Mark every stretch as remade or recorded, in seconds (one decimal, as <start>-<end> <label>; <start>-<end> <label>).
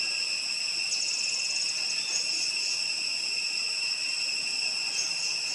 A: 0.0-5.5 recorded